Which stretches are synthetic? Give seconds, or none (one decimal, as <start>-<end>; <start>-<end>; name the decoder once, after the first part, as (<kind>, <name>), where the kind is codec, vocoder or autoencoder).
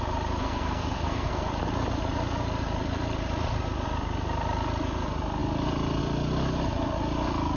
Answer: 0.4-1.5 (codec, SNAC)